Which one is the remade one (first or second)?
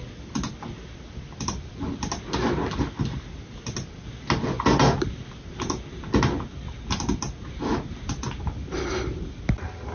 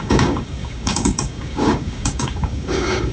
second